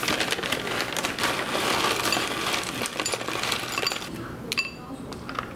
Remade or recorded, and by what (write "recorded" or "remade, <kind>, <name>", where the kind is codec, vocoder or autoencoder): recorded